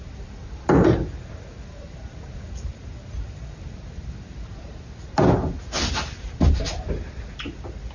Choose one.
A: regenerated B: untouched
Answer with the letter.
B